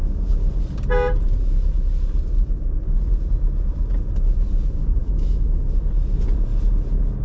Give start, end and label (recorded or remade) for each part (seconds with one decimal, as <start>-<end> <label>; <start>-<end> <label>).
0.0-5.0 recorded; 5.0-5.6 remade; 5.6-7.2 recorded